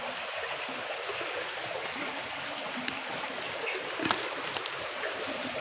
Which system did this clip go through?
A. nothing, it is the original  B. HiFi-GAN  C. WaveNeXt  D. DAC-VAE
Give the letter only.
A